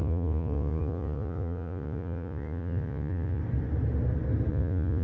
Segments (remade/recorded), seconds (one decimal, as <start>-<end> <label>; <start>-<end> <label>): 0.0-3.4 remade; 3.4-4.5 recorded; 4.5-5.0 remade